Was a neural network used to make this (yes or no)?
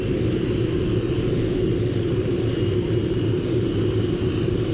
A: no